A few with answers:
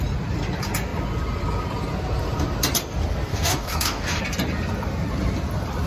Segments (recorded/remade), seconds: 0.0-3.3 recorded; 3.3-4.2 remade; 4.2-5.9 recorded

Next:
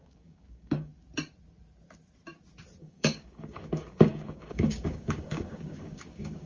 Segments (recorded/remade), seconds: 0.0-0.9 remade; 0.9-2.8 recorded; 2.8-6.5 remade

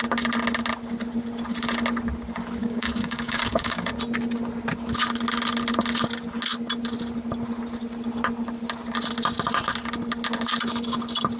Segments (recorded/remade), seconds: 0.0-2.6 recorded; 2.6-3.9 remade; 3.9-11.4 recorded

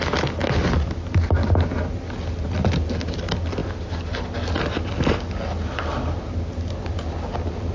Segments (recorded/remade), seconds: 0.0-7.7 recorded

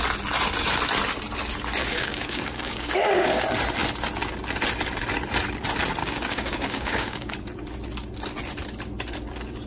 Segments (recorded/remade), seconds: 0.0-1.8 recorded; 1.8-3.4 remade; 3.4-6.0 recorded; 6.0-7.3 remade; 7.3-9.7 recorded